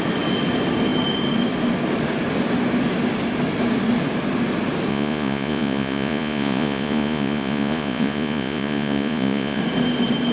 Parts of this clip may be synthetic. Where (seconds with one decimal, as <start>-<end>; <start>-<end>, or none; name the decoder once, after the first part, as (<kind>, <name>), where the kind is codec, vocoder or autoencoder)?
4.9-9.6 (vocoder, Vocos)